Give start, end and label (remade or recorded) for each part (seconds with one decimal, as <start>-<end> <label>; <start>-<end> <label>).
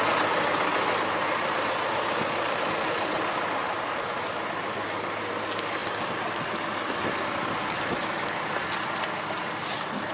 0.0-0.7 recorded; 0.7-2.7 remade; 2.7-10.1 recorded